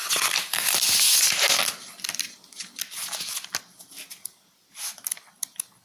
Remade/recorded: recorded